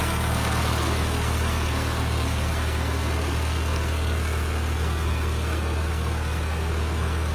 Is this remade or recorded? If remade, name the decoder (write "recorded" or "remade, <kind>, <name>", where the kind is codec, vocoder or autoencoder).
remade, codec, SNAC